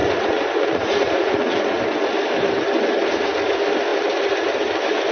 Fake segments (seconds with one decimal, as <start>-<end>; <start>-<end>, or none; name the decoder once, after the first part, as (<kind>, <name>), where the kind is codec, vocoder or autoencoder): 0.0-1.8 (vocoder, Vocos)